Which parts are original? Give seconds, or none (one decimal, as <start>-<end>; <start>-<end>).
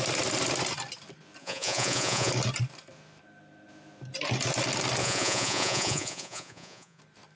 0.0-1.4; 2.3-5.0; 7.0-7.4